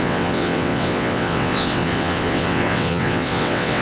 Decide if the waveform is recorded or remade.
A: remade